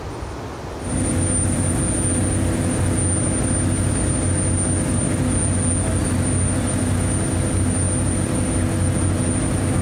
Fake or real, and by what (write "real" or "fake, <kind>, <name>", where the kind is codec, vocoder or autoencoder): real